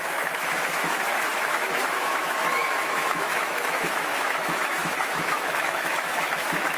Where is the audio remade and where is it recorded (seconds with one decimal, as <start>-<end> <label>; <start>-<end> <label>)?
0.0-6.8 remade